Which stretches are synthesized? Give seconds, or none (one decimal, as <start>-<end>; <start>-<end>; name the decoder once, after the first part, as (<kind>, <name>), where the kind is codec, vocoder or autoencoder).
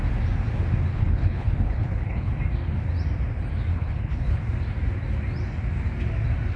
0.9-2.3 (codec, HILCodec); 3.7-4.4